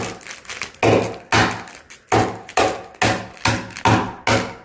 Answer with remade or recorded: recorded